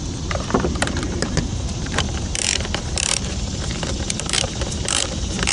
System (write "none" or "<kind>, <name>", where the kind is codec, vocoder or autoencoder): vocoder, BigVGAN v2